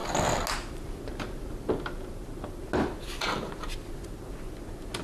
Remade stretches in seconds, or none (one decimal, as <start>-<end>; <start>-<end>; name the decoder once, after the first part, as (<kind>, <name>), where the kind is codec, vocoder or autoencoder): none